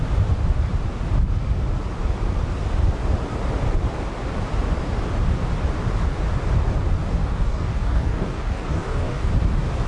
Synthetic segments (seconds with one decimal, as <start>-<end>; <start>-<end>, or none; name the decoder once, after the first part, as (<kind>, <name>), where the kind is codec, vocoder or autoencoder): 7.2-9.3 (codec, DAC)